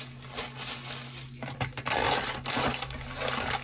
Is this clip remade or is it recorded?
recorded